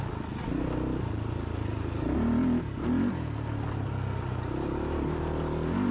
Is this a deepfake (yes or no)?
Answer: no